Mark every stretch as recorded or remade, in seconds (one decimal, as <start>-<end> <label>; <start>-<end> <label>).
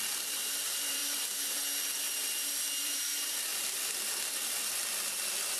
0.0-1.0 remade; 1.0-2.8 recorded; 2.8-3.5 remade; 3.5-5.6 recorded